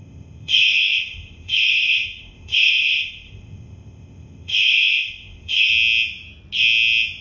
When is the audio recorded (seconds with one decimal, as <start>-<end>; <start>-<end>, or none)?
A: 5.7-7.2